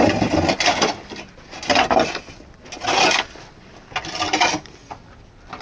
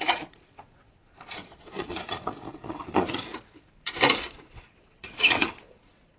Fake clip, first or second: second